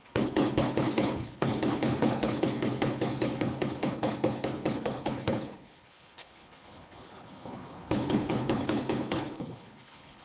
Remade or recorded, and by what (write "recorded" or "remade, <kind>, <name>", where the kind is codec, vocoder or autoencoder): remade, codec, HILCodec